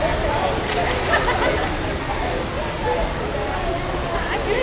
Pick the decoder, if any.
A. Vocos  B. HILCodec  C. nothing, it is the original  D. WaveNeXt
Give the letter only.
C